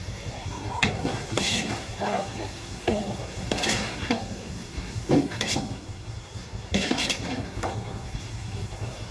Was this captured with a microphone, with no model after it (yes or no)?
no